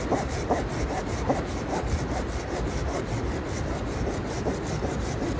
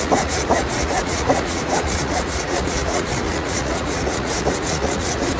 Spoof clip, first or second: second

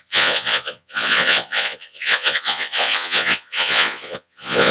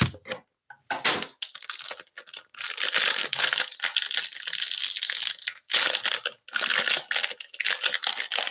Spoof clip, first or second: first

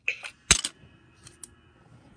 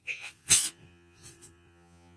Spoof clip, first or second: second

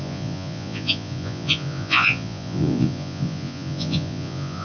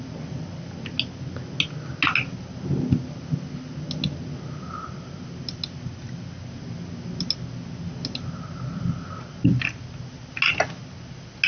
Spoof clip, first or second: first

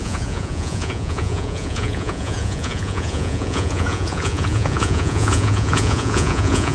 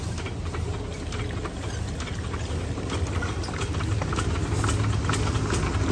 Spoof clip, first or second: first